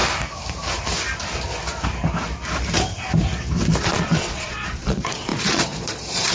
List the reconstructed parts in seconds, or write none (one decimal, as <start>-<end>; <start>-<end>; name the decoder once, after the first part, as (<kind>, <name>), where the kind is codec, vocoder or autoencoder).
3.8-6.3 (vocoder, Vocos)